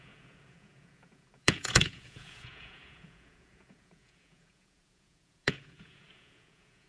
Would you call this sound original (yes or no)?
no